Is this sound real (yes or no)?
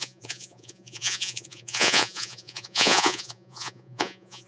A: no